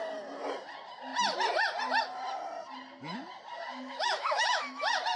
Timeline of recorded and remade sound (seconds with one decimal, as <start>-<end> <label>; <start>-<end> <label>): 0.0-3.7 recorded; 3.7-4.8 remade; 4.8-5.2 recorded